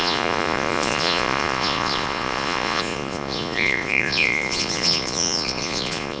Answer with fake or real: fake